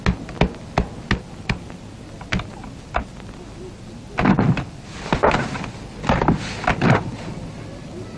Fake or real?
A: real